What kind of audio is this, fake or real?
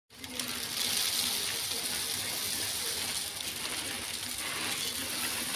real